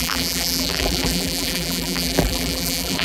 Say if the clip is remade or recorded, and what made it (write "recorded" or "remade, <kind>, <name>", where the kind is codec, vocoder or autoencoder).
remade, vocoder, BigVGAN v2